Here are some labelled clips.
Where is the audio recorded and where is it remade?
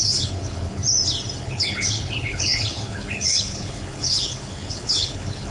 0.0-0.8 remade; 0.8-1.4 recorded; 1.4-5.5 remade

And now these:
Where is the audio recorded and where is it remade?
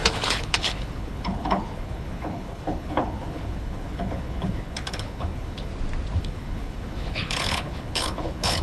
0.0-5.7 remade; 5.7-6.2 recorded; 6.2-8.6 remade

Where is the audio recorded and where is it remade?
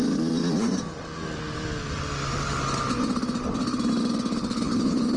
0.0-4.4 recorded; 4.4-5.2 remade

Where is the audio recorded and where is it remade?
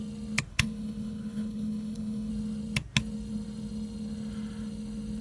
0.0-0.5 recorded; 0.5-2.3 remade; 2.3-5.2 recorded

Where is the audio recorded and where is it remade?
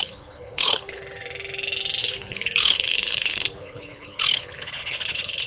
0.0-1.0 remade; 1.0-2.0 recorded; 2.0-5.5 remade